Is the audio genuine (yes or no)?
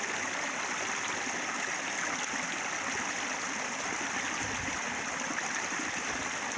yes